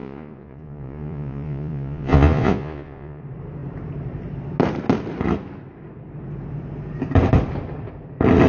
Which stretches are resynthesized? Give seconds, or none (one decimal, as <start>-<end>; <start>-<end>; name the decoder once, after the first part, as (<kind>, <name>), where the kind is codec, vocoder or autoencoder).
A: 0.0-3.2 (vocoder, Vocos)